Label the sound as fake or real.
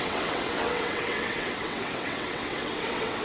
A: fake